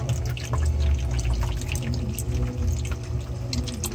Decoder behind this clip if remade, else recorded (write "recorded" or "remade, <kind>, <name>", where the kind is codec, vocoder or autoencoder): recorded